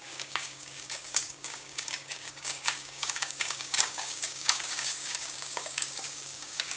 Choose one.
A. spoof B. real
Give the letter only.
A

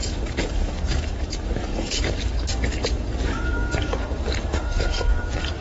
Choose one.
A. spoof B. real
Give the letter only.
A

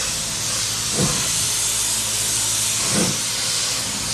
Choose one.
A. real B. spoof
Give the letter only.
A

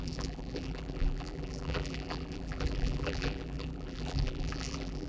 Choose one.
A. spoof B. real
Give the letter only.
A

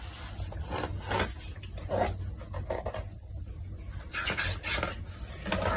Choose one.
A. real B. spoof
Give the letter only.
A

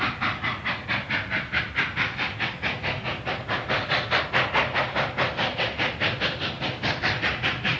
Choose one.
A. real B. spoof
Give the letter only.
A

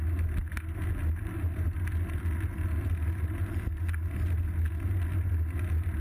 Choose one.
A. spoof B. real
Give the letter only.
B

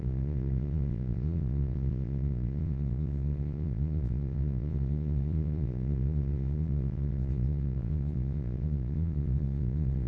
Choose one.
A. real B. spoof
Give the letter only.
B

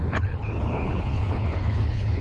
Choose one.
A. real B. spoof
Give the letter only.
B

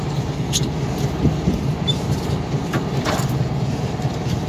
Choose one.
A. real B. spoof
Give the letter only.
A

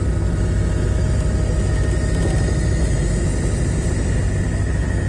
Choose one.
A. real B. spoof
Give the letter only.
A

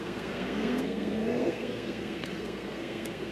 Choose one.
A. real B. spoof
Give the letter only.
B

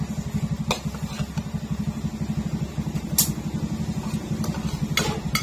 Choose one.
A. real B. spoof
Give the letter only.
A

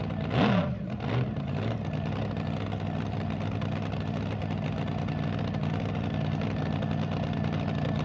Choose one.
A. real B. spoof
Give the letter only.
A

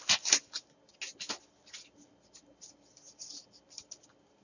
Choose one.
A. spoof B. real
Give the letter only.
B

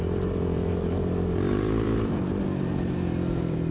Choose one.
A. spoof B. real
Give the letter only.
A